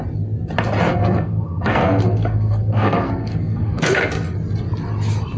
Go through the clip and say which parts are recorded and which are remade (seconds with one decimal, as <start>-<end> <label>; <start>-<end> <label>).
0.0-0.9 recorded; 0.9-4.1 remade; 4.1-5.4 recorded